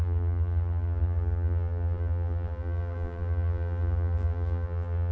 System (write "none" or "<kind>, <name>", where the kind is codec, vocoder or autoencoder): vocoder, BigVGAN v2